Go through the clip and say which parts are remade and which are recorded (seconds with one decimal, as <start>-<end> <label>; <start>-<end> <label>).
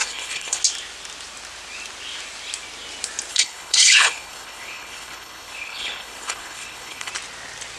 0.0-0.6 remade; 0.6-3.3 recorded; 3.3-7.1 remade; 7.1-7.8 recorded